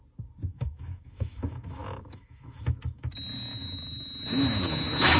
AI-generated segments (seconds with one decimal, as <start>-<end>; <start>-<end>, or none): 0.5-3.1; 3.6-5.2